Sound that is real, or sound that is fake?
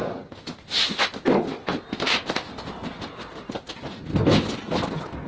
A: real